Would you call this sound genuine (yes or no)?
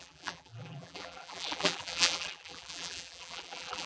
no